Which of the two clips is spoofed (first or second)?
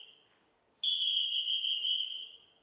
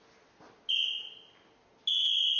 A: first